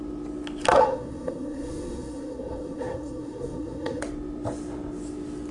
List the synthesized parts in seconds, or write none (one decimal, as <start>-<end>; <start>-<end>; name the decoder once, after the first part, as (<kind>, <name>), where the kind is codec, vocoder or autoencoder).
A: 0.7-4.0 (codec, SNAC)

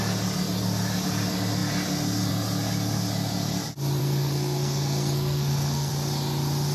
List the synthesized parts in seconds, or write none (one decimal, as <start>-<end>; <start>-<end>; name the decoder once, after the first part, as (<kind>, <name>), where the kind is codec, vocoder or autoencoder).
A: 4.0-5.9 (codec, SNAC)

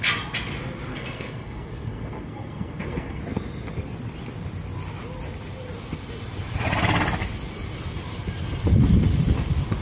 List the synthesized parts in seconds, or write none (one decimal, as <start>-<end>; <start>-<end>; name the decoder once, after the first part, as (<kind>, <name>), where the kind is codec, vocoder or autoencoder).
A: 0.9-3.2 (codec, SNAC)

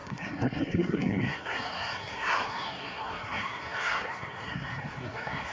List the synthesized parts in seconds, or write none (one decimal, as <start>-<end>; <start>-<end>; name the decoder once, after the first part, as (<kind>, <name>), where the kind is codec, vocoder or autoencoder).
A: 0.0-5.5 (codec, SNAC)

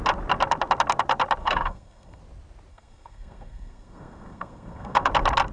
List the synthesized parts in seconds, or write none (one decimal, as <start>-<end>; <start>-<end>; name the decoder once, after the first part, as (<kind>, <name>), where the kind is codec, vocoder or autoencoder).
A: 1.4-2.2 (codec, SNAC); 2.7-5.1

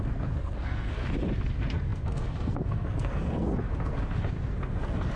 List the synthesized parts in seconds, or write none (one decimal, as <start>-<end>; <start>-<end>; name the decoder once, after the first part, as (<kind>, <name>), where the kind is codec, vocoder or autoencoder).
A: 0.0-1.0 (codec, SNAC); 1.5-5.2

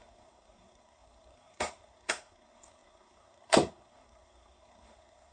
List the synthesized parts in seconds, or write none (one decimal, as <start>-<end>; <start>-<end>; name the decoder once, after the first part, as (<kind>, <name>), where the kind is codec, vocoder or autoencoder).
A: 0.0-5.3 (codec, SNAC)

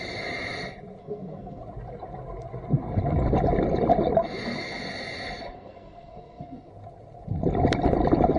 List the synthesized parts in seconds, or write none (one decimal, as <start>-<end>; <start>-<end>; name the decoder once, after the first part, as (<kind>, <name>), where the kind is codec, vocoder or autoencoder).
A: 1.0-1.6 (codec, SNAC); 5.5-6.7